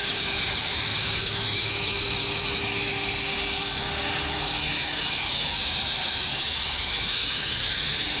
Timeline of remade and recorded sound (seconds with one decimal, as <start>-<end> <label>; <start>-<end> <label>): 0.0-3.0 remade; 3.0-4.1 recorded; 4.1-8.2 remade